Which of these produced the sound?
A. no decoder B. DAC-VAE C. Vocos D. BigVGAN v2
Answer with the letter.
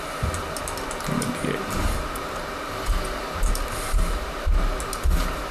A